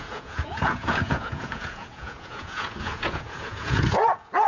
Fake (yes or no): yes